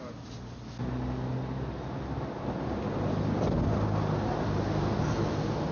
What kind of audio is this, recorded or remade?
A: recorded